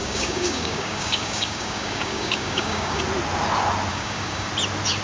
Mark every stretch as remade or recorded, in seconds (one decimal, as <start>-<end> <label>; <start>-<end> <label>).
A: 0.0-3.0 remade; 3.0-3.9 recorded; 3.9-4.5 remade; 4.5-5.0 recorded